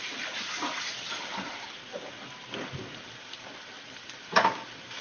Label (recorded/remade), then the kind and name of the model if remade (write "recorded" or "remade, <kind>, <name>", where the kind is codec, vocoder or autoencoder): recorded